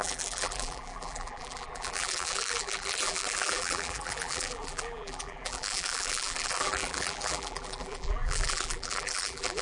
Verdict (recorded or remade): remade